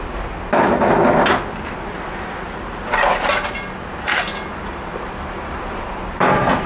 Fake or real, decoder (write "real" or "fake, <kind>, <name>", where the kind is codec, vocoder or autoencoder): real